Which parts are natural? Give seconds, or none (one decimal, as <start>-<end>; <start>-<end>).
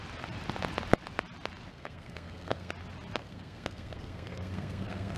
0.0-1.7; 2.7-3.2